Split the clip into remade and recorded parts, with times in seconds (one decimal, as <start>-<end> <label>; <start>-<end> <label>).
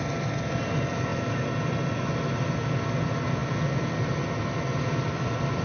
0.0-5.6 recorded